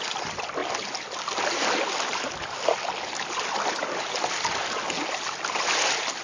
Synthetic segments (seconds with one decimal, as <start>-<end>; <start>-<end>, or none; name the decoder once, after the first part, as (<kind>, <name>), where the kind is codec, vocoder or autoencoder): none